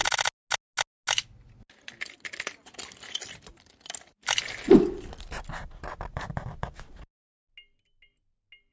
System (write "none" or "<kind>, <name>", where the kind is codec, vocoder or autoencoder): none